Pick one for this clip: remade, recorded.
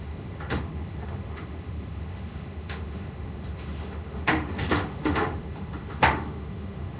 remade